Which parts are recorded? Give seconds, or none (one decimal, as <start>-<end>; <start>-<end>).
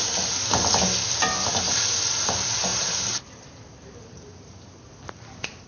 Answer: 0.0-5.7